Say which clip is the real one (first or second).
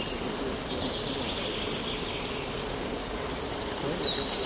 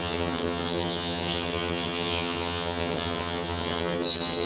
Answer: first